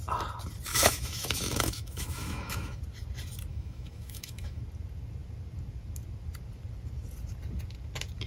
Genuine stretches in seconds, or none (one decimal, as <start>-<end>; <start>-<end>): 0.0-0.7; 2.8-3.5; 4.6-8.3